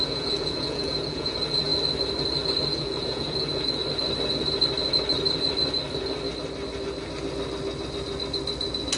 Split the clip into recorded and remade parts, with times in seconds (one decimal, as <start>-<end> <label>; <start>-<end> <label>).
0.0-1.7 remade; 1.7-2.6 recorded; 2.6-3.8 remade; 3.8-9.0 recorded